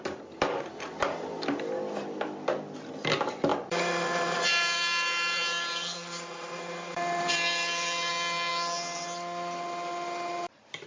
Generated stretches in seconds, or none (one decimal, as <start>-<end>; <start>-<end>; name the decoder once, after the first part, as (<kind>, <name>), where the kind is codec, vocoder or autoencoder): 3.5-8.1 (vocoder, BigVGAN v2)